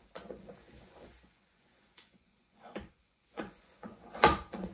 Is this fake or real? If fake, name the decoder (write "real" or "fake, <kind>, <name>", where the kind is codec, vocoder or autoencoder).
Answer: fake, vocoder, Vocos